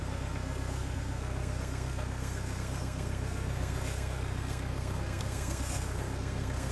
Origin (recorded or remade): remade